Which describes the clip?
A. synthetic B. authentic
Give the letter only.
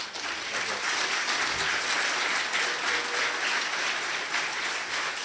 B